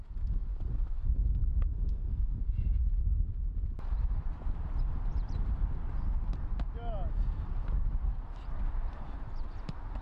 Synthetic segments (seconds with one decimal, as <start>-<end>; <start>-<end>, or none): 1.7-2.4